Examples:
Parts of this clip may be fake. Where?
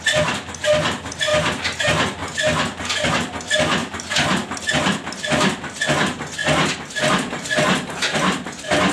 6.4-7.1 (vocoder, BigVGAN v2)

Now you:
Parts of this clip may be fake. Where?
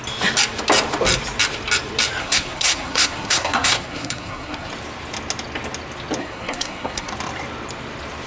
2.2-4.7 (codec, SNAC); 6.2-7.1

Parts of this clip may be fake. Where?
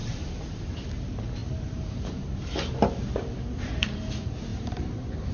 0.0-0.6 (vocoder, BigVGAN v2); 4.5-5.3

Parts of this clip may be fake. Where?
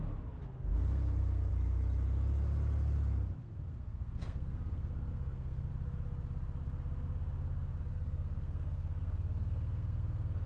0.7-1.5 (codec, SNAC); 3.4-5.7; 7.9-10.5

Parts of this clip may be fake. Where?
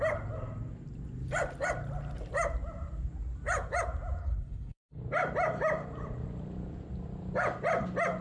4.2-5.0 (codec, HILCodec)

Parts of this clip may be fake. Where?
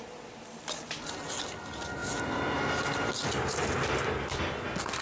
2.0-2.8 (vocoder, BigVGAN v2)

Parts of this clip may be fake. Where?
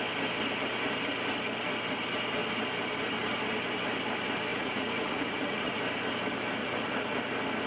4.5-5.8 (vocoder, Vocos); 6.6-7.2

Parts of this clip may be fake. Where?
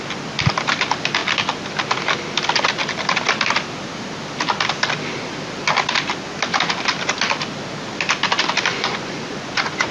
8.7-9.9 (vocoder, Vocos)